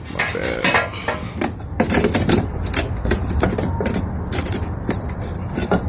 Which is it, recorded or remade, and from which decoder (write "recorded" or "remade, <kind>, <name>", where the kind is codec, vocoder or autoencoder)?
remade, vocoder, BigVGAN v2